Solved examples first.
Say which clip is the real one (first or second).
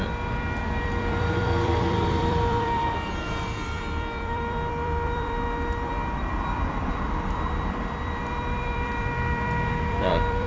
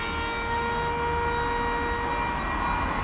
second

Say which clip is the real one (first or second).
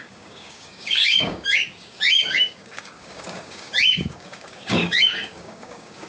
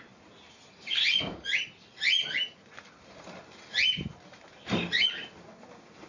second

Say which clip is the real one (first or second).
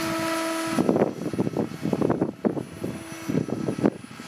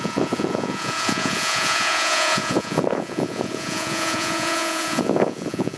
first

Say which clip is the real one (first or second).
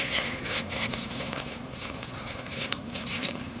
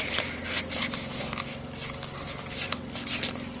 second